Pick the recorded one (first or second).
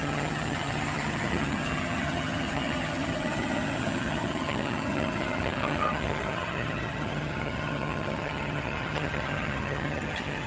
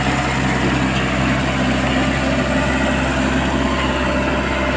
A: second